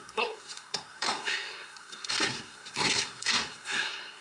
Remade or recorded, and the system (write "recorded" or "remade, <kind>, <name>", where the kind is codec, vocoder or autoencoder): remade, codec, SNAC